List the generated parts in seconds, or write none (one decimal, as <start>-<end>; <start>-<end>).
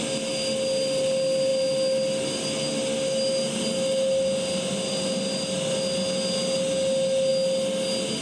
none